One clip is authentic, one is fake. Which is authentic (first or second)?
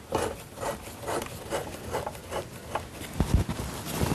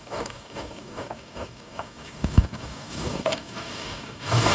first